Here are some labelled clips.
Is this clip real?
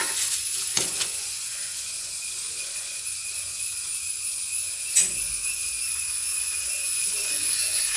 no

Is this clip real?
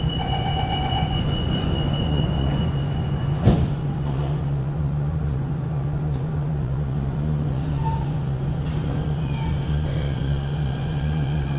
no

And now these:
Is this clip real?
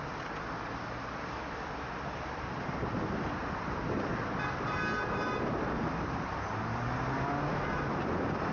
yes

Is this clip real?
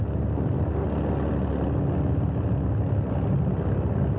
yes